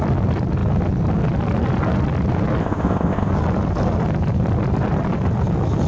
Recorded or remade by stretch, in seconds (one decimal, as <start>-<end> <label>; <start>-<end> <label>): 0.0-2.6 recorded; 2.6-3.3 remade; 3.3-5.9 recorded